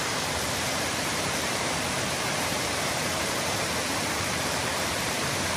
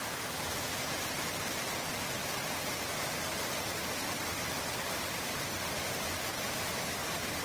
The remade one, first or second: first